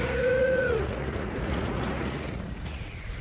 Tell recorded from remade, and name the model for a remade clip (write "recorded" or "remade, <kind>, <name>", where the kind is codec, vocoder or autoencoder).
remade, vocoder, Vocos